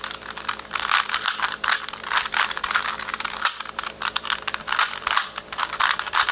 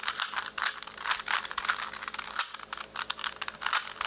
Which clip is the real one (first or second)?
second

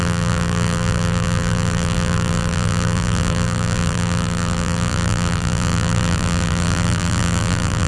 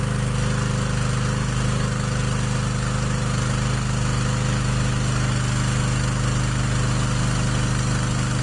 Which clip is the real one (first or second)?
second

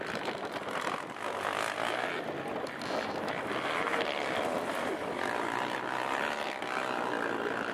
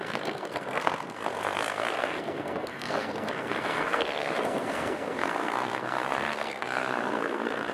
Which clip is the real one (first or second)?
first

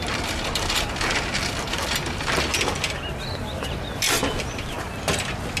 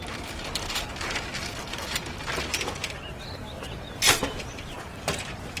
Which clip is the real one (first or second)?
first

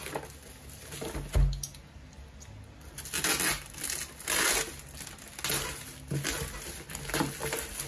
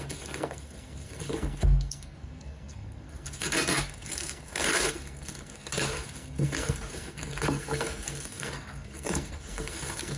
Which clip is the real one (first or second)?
first